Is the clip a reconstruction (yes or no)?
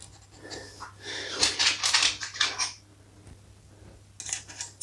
no